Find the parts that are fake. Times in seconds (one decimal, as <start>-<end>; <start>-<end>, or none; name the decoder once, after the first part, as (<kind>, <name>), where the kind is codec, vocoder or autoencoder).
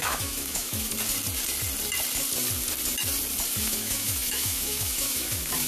0.0-0.9 (autoencoder, DAC-VAE); 3.6-5.7